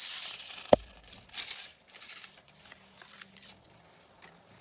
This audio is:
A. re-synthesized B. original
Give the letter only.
B